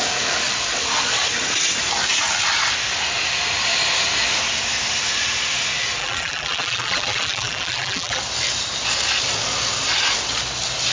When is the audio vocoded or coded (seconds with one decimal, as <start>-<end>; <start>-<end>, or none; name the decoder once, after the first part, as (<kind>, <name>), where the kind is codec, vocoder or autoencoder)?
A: 6.0-8.2 (vocoder, BigVGAN v2)